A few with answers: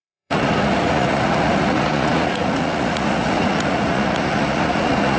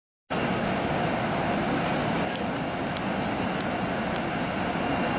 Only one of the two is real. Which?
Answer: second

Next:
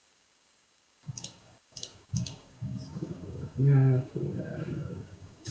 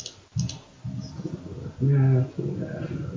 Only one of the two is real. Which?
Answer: second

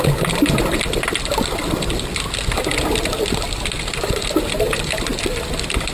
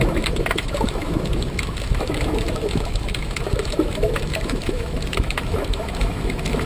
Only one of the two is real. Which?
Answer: first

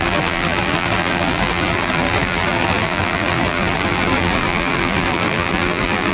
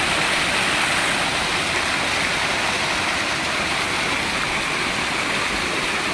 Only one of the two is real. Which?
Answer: second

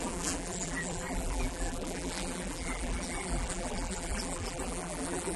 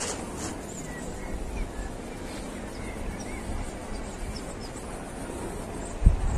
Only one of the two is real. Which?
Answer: second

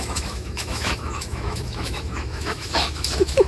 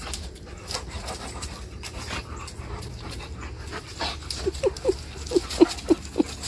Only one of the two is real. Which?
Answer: second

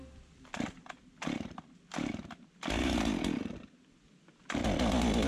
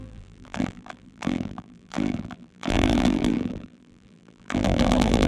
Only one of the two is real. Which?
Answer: first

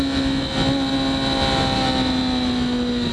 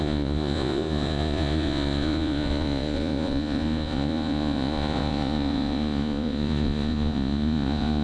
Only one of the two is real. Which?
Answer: first